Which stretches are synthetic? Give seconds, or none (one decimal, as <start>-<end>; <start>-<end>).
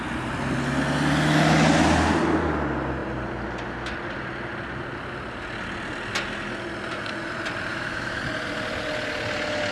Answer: 7.7-8.2